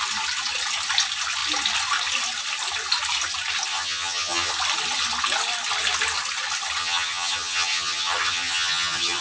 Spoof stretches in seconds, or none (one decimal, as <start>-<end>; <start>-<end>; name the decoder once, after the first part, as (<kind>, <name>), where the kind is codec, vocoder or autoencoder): 3.7-4.5 (vocoder, HiFi-GAN); 6.8-9.2